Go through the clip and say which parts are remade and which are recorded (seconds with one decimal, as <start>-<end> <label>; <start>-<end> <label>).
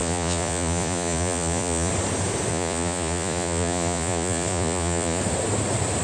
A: 0.0-1.9 remade; 1.9-2.5 recorded; 2.5-5.2 remade; 5.2-6.0 recorded